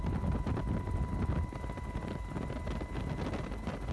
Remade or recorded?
recorded